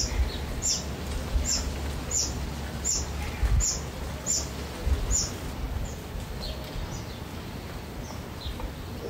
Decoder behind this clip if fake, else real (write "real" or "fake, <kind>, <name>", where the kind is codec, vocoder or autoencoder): real